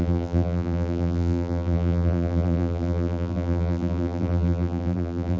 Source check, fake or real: fake